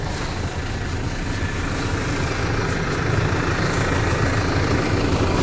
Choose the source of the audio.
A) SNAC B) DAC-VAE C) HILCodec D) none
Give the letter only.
D